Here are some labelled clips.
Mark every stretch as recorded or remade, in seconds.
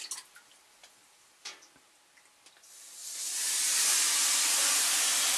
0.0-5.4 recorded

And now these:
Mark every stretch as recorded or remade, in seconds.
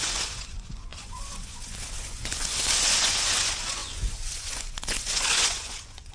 0.0-6.1 remade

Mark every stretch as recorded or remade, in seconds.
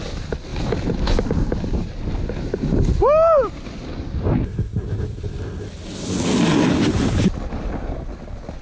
0.0-8.6 recorded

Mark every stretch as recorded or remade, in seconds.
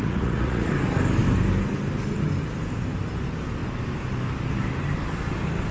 0.0-0.7 remade; 0.7-5.7 recorded